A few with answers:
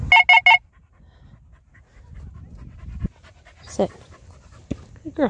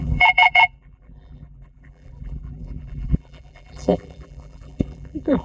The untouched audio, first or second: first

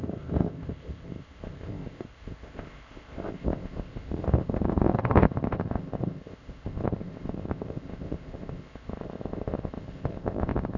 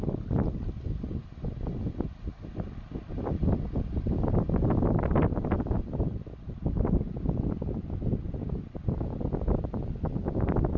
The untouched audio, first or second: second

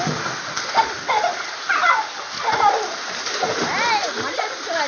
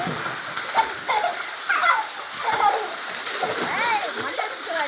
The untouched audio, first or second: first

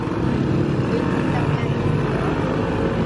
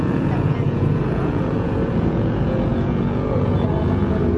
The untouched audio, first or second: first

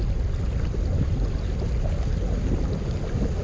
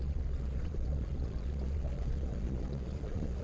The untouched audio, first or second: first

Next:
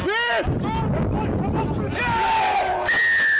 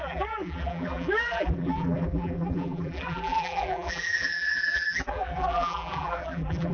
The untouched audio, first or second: first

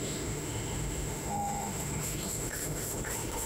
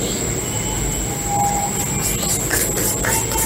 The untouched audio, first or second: second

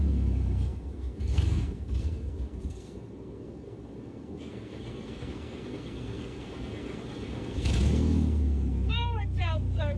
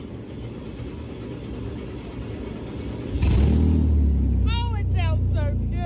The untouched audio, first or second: second